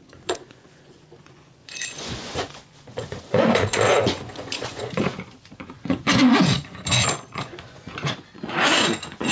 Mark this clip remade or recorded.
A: remade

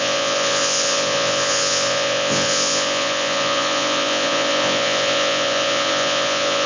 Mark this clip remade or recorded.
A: remade